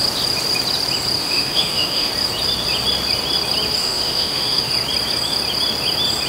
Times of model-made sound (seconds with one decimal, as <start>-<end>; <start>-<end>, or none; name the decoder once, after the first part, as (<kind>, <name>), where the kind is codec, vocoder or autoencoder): 1.2-2.1 (autoencoder, DAC-VAE); 3.8-4.7